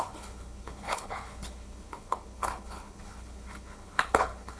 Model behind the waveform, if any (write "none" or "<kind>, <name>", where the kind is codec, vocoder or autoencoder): codec, HILCodec